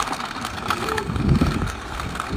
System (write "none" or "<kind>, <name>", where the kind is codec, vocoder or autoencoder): codec, SNAC